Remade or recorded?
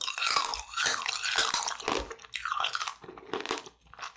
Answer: recorded